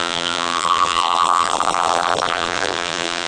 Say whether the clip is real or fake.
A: fake